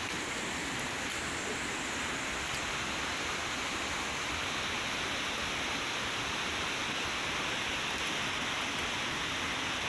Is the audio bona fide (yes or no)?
yes